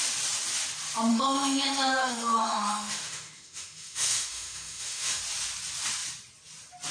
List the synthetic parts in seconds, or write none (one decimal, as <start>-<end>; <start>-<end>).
1.1-5.2